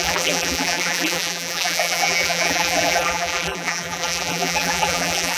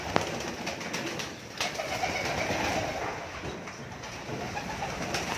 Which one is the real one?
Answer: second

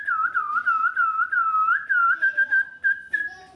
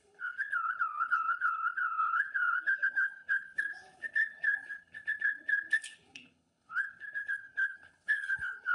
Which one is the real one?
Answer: first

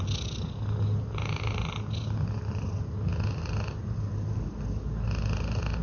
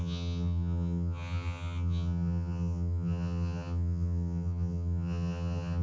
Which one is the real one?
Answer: first